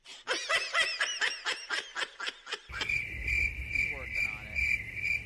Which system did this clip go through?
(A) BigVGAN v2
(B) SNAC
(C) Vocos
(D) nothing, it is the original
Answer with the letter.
D